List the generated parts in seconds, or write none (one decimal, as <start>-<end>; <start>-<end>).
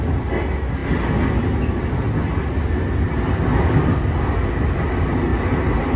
none